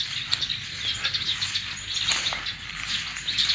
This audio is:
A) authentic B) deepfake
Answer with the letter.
A